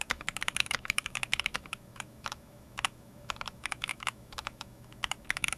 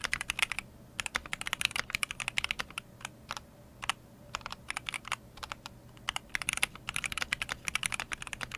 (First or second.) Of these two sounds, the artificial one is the first